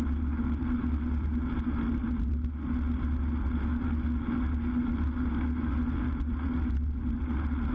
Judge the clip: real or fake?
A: real